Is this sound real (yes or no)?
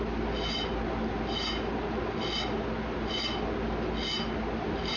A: yes